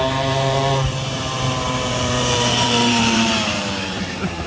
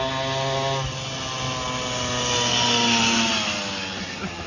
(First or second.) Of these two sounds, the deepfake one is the first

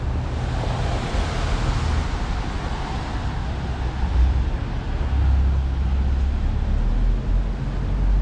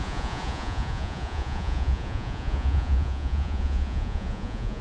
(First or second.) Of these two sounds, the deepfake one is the second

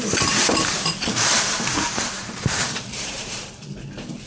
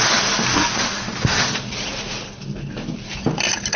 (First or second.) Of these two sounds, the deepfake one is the first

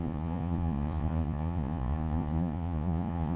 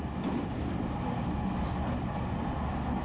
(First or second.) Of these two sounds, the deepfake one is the first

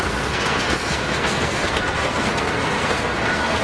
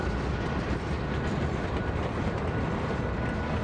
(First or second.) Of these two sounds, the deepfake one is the first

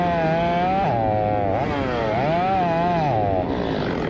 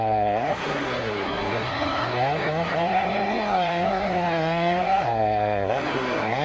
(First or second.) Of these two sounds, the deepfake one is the second